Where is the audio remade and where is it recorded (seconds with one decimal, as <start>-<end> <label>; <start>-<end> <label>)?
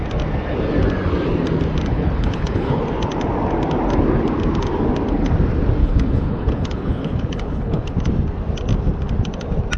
0.0-1.9 recorded; 1.9-2.8 remade; 2.8-5.8 recorded; 5.8-7.9 remade; 7.9-9.8 recorded